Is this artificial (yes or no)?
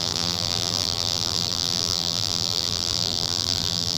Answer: yes